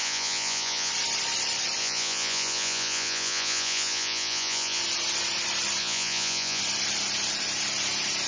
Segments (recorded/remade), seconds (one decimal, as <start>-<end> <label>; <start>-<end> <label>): 0.0-0.9 remade; 0.9-1.8 recorded; 1.8-4.8 remade; 4.8-5.8 recorded; 5.8-6.6 remade; 6.6-8.3 recorded